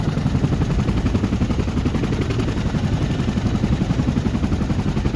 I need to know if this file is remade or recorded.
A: recorded